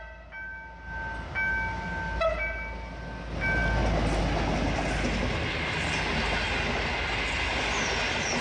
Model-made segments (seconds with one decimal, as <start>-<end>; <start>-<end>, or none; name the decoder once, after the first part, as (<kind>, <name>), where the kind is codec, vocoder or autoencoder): none